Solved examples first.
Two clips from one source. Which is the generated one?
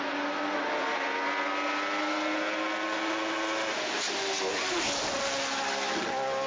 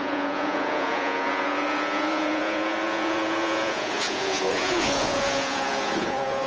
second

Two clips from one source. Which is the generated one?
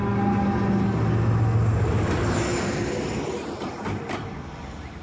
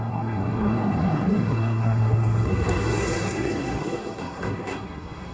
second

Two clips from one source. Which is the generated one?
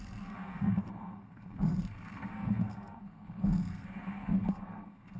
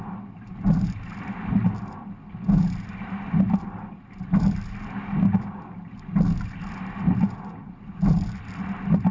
first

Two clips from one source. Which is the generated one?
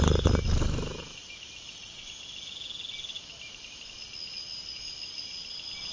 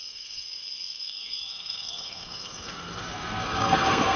second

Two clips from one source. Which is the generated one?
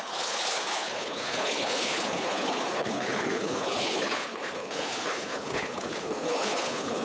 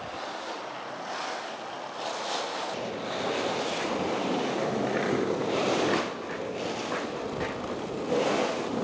first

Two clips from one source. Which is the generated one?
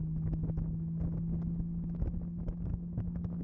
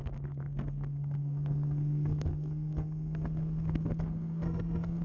second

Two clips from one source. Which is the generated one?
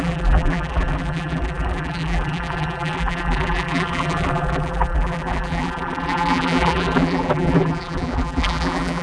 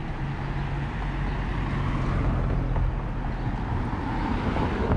first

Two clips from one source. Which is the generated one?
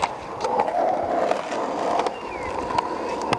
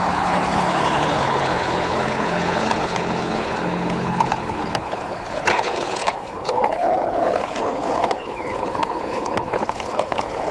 second